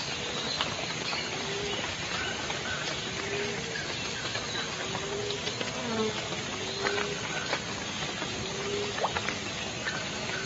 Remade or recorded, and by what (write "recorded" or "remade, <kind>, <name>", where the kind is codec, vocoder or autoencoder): recorded